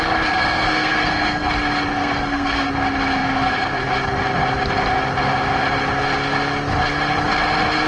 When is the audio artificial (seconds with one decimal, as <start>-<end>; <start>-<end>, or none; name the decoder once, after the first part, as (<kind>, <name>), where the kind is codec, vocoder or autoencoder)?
0.4-1.5 (codec, SNAC); 2.0-2.7